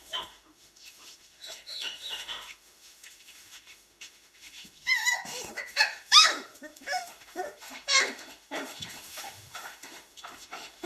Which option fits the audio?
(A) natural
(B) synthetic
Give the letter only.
B